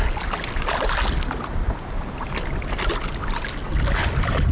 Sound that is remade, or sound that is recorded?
recorded